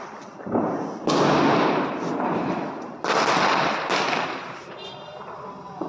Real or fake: real